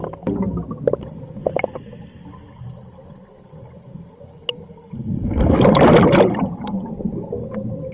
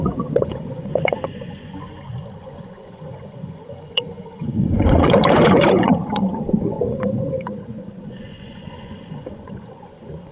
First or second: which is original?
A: first